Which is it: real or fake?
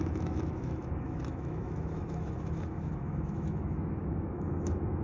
fake